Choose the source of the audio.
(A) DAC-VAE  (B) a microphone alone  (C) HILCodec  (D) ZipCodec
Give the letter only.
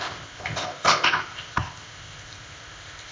D